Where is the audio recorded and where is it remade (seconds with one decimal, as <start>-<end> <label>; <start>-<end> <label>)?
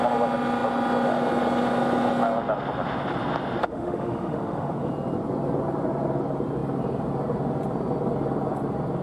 0.0-3.6 recorded; 3.6-4.9 remade; 4.9-9.0 recorded